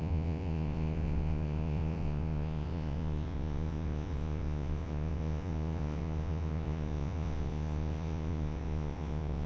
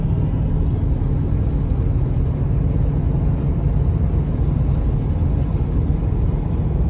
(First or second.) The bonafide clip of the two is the second